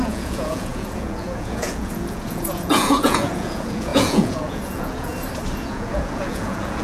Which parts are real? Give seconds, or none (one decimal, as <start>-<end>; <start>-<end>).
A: 5.1-5.6